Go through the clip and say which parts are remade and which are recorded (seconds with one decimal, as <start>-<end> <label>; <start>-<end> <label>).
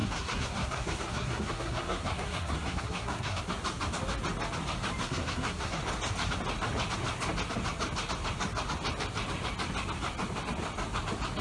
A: 0.0-3.4 remade; 3.4-5.0 recorded; 5.0-5.8 remade; 5.8-11.4 recorded